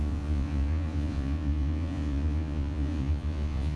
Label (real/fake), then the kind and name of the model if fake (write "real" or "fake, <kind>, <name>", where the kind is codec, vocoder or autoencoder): fake, vocoder, Vocos